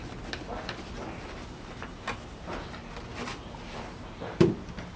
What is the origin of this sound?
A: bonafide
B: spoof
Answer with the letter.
B